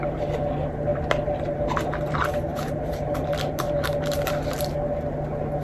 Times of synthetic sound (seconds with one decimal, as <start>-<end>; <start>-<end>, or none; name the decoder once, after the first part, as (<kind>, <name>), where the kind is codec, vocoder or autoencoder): 0.9-4.3 (vocoder, BigVGAN v2)